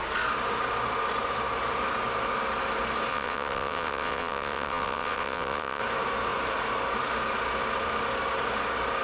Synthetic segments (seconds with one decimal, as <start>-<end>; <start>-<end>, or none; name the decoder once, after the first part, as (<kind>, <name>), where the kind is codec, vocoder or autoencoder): 3.1-5.8 (vocoder, WaveNeXt)